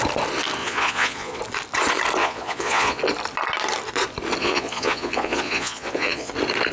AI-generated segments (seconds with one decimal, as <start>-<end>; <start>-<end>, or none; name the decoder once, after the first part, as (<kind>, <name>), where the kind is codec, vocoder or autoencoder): 0.6-1.4 (vocoder, Vocos); 2.2-3.0; 4.4-6.3